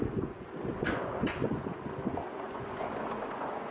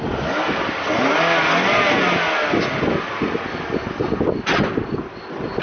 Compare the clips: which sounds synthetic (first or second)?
first